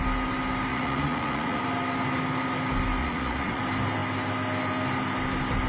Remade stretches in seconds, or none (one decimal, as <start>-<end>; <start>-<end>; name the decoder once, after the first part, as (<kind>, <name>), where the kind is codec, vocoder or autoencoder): 0.7-1.6 (vocoder, Vocos); 3.0-3.6